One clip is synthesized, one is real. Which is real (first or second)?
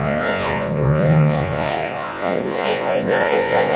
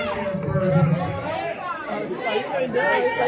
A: second